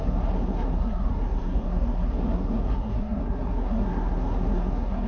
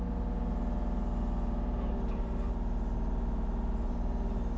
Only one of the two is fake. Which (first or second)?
first